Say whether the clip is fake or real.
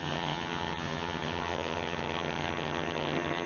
fake